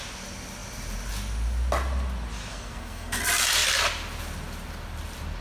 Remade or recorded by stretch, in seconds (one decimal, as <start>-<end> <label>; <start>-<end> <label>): 0.0-2.5 recorded; 2.5-3.2 remade; 3.2-5.4 recorded